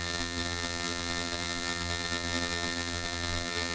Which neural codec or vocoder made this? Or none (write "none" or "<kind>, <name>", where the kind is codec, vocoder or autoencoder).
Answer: vocoder, BigVGAN v2